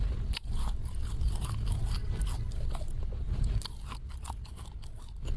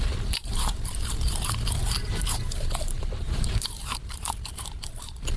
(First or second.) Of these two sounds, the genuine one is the first